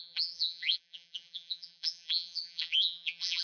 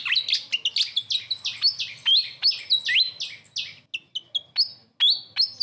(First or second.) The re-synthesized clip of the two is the first